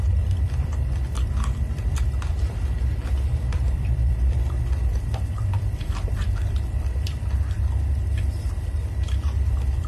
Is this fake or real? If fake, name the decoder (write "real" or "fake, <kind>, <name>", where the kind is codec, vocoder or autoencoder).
fake, vocoder, BigVGAN v2